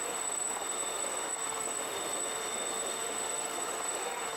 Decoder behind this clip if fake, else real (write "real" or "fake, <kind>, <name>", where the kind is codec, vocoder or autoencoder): fake, autoencoder, DAC-VAE